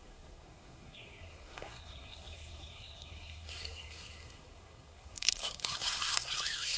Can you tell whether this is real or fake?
fake